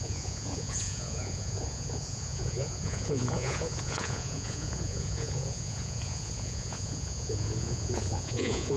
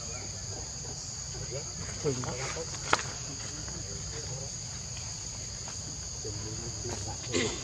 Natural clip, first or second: second